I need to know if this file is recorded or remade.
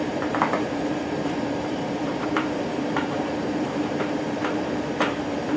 remade